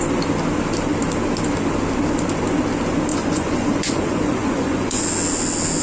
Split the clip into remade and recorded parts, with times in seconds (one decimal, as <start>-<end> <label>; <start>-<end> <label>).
0.0-3.1 recorded; 3.1-5.0 remade; 5.0-5.8 recorded